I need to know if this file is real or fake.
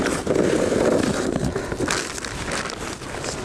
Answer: real